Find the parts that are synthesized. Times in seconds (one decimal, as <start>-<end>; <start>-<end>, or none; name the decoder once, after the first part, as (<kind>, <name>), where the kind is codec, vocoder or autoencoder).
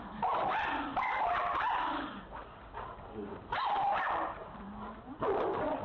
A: none